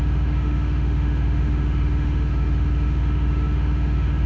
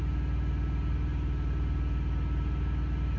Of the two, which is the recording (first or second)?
second